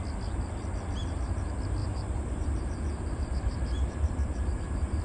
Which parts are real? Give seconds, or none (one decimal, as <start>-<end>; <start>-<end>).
0.0-1.8; 4.6-5.0